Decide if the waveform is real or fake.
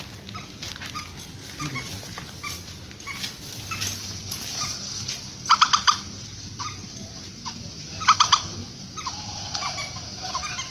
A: real